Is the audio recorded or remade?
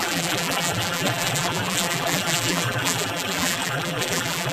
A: remade